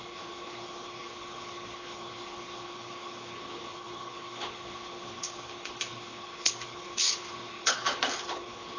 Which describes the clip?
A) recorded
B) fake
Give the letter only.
B